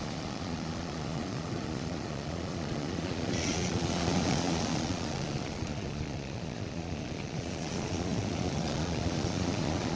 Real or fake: fake